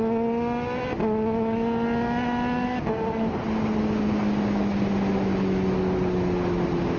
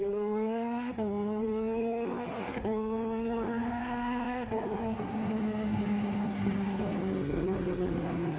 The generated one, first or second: second